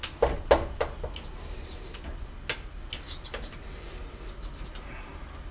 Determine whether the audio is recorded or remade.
recorded